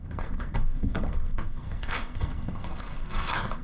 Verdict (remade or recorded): remade